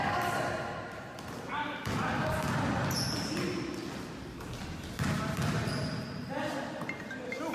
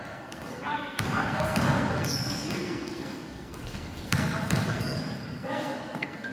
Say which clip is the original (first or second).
first